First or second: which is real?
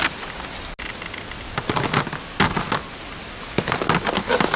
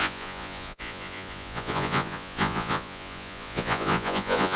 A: first